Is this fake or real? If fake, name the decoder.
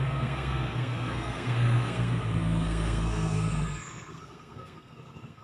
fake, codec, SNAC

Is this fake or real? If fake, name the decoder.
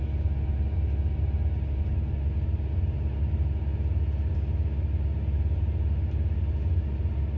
real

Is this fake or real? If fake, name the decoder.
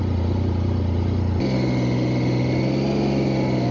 real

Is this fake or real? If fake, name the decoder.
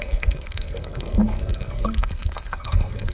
fake, codec, SNAC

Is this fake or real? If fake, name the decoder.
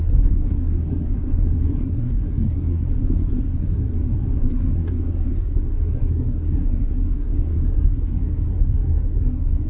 fake, codec, SNAC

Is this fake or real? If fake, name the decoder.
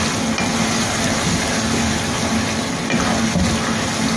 real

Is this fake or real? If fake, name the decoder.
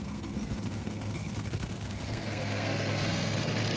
fake, codec, SNAC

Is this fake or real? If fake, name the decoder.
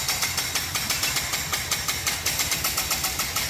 real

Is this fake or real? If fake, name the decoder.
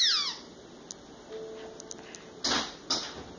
real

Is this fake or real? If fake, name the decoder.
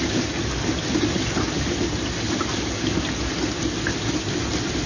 real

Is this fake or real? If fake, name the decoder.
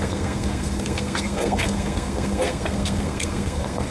fake, codec, SNAC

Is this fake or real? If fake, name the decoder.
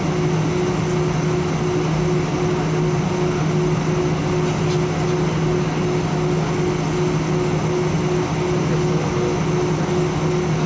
real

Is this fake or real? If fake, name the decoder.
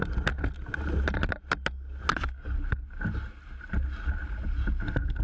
real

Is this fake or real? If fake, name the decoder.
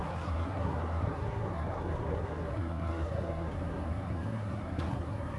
fake, codec, SNAC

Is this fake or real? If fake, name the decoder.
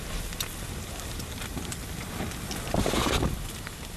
real